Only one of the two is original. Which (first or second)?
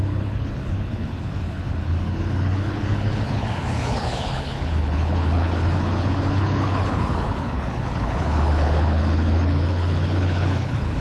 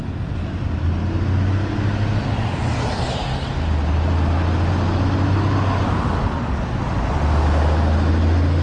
second